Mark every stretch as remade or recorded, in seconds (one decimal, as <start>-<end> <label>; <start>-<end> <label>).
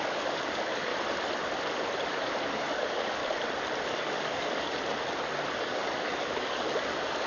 0.0-0.9 remade; 0.9-2.1 recorded; 2.1-3.2 remade; 3.2-3.9 recorded; 3.9-4.7 remade; 4.7-5.5 recorded; 5.5-7.3 remade